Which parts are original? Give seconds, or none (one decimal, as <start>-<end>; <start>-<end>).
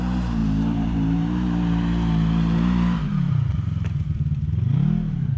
0.0-0.4; 3.5-5.4